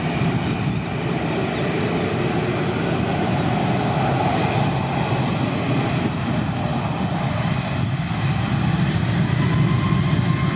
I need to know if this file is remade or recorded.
recorded